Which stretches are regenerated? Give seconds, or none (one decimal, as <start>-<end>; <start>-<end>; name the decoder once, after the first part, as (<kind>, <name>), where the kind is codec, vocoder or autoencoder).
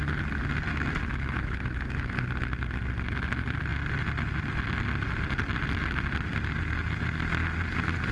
0.7-2.2 (autoencoder, DAC-VAE)